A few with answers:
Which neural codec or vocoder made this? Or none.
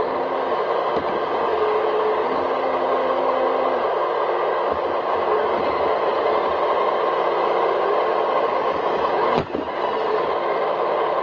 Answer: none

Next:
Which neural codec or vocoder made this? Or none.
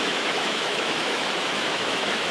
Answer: autoencoder, DAC-VAE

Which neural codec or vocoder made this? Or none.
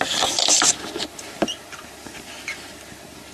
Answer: none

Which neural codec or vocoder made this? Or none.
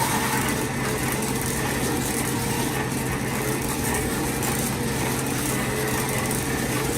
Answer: none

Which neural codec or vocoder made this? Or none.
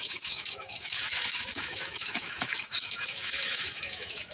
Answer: autoencoder, DAC-VAE